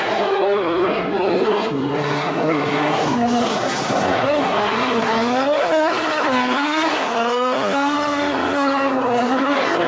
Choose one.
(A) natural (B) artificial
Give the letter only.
B